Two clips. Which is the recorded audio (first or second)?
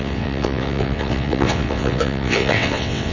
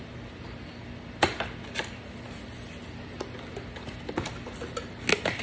second